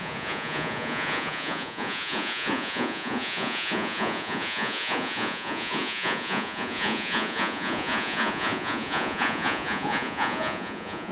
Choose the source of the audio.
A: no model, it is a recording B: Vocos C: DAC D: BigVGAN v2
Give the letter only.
B